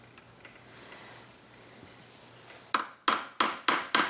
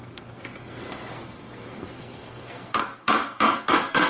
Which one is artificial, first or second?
second